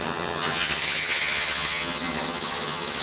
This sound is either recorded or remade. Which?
remade